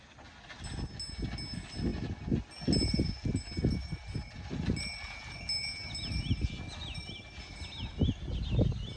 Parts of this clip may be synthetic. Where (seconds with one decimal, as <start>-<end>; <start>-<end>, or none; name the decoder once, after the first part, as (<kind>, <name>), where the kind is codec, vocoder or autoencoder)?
none